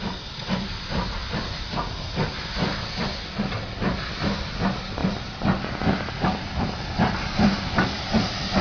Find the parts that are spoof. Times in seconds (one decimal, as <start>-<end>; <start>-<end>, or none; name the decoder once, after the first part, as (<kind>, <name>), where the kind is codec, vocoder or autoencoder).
none